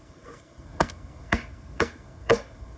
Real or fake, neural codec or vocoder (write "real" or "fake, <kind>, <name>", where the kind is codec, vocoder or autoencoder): fake, codec, SNAC